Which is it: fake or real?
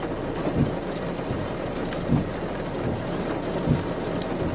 real